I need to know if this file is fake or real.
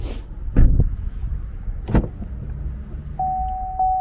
real